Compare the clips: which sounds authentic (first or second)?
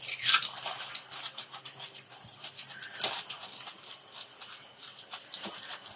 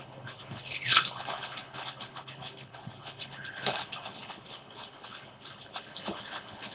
first